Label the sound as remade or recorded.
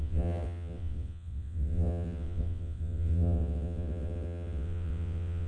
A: remade